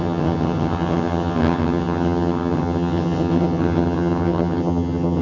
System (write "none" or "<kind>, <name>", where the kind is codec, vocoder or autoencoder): vocoder, HiFi-GAN